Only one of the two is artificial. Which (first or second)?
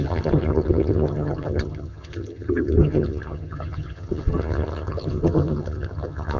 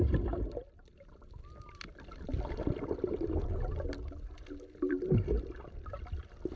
first